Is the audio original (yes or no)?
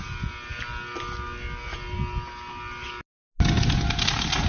yes